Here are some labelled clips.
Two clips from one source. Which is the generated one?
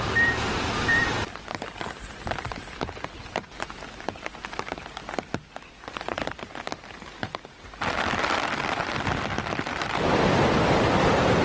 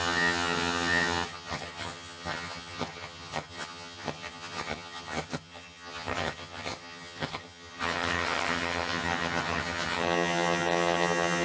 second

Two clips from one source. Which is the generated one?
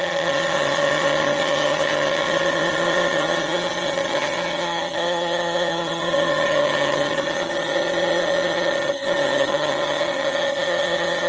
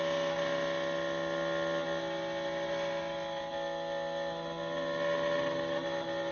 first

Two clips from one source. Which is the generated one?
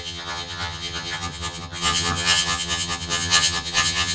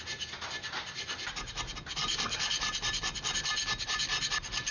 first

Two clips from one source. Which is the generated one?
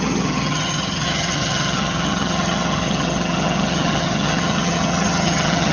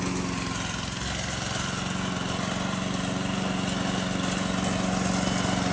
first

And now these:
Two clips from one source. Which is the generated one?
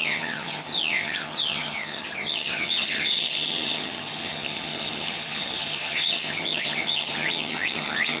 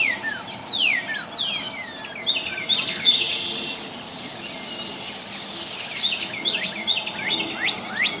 first